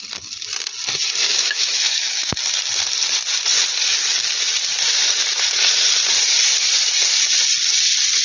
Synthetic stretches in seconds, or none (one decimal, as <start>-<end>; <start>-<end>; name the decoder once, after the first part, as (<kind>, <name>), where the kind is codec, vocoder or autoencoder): 1.3-2.3 (autoencoder, DAC-VAE)